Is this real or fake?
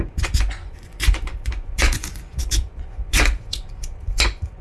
fake